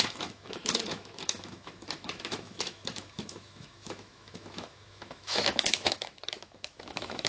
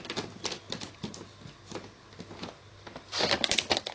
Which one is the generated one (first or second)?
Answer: first